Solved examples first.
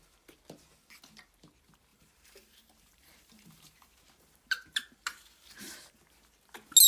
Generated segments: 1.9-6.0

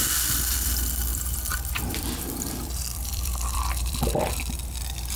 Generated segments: 0.0-5.2

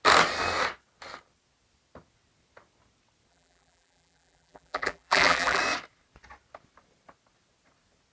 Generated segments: 3.3-5.6

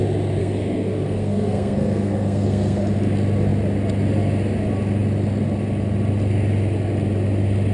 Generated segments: 0.4-2.8

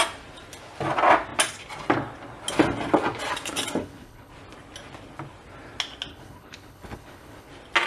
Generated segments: 3.8-4.3; 6.1-7.5

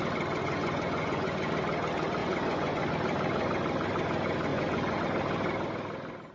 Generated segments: 0.4-1.5; 2.2-2.9; 4.5-5.0

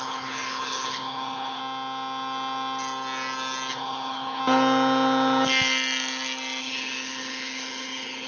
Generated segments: 0.0-1.6; 3.7-4.4; 6.6-8.3

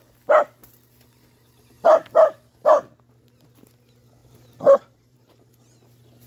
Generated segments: 4.2-5.5